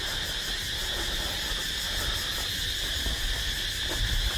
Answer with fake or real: real